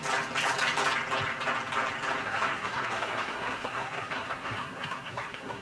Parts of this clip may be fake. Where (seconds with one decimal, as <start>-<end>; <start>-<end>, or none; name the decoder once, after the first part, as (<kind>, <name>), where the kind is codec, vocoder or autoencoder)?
2.2-5.6 (codec, SNAC)